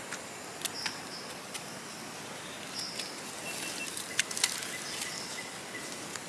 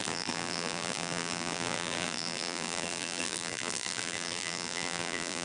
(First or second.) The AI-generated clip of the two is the second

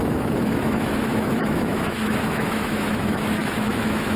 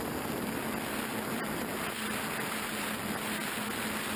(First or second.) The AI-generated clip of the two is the first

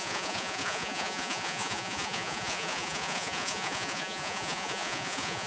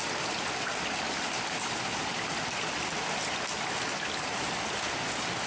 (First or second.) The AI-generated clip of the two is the first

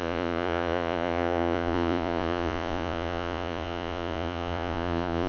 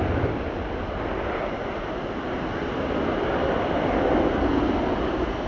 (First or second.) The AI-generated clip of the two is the first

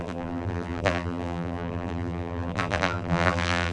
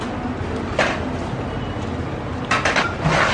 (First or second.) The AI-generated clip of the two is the first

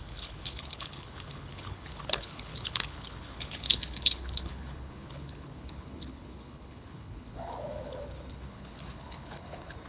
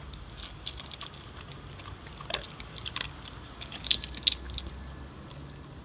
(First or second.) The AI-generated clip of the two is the first